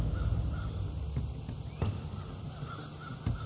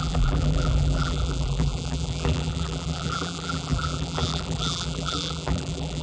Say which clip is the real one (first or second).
first